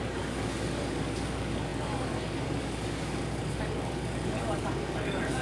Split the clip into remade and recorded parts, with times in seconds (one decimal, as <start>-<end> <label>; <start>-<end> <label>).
0.0-5.4 remade